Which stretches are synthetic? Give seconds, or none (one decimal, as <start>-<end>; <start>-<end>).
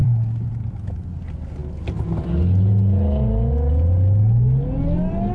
0.0-0.5